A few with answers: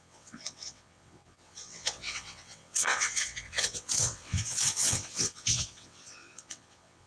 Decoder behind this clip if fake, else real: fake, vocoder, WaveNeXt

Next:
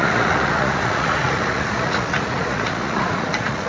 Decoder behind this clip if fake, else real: fake, vocoder, Vocos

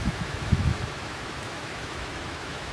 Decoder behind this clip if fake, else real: fake, autoencoder, DAC-VAE